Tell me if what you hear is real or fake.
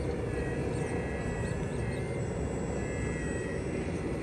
real